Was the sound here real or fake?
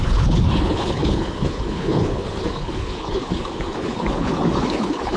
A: fake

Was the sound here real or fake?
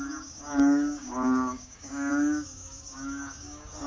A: fake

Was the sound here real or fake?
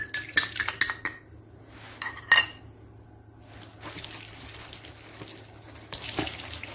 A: real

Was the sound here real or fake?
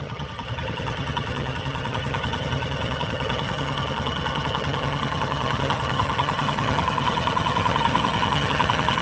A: fake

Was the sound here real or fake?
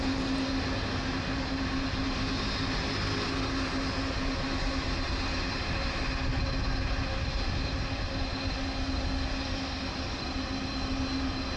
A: real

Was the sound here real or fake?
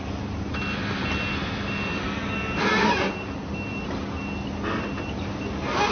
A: real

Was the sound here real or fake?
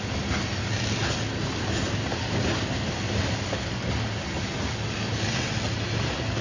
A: real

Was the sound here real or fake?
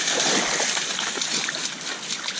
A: real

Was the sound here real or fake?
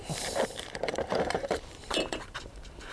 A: fake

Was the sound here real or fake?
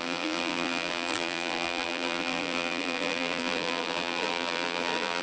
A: fake